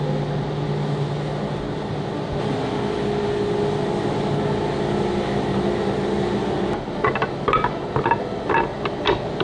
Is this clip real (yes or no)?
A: yes